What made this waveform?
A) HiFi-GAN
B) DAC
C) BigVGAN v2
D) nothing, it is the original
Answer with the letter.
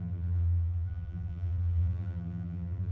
C